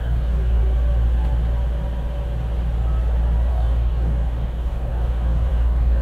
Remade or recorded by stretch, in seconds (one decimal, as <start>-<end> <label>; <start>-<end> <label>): 0.0-0.6 remade; 0.6-3.5 recorded; 3.5-6.0 remade